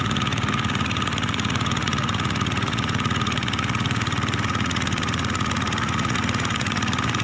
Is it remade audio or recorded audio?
remade